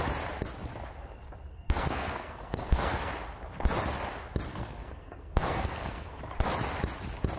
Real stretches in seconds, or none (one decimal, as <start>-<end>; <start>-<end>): 0.0-1.5; 3.1-4.5; 6.2-7.4